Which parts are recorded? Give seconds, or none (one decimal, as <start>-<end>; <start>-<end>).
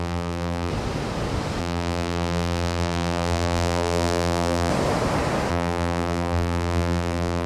0.7-1.6; 4.7-5.5